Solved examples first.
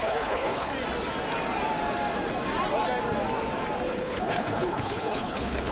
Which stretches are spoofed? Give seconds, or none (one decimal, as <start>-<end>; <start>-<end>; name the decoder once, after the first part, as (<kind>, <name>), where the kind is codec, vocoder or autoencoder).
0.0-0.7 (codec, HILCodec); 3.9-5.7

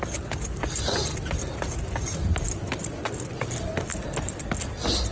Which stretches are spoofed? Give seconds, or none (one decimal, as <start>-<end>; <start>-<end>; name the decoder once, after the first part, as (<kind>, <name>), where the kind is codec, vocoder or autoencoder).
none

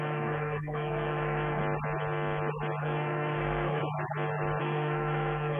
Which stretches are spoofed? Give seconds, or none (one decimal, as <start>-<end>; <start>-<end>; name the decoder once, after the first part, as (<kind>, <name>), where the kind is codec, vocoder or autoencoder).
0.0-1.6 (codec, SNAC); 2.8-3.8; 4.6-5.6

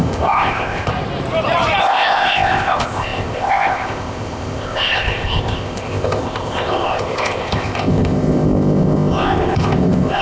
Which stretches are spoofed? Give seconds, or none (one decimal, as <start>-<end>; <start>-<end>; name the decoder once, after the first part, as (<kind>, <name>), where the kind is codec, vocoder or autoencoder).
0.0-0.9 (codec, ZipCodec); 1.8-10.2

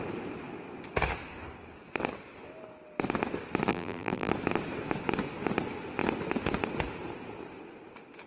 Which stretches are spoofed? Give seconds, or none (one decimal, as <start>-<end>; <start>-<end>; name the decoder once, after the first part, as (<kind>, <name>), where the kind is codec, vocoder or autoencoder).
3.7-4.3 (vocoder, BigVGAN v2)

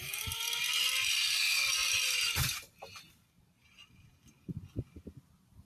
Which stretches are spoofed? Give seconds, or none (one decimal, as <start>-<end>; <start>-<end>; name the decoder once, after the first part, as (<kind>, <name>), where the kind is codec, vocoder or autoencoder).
none

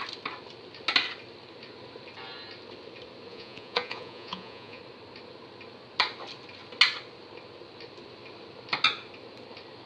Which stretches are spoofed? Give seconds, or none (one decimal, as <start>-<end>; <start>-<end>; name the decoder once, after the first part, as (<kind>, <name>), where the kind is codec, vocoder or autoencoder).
3.3-4.8 (vocoder, Vocos)

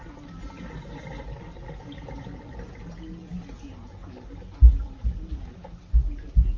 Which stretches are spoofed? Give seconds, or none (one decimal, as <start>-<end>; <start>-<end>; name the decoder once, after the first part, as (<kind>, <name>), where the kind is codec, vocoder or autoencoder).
none